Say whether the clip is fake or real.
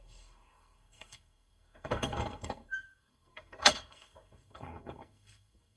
fake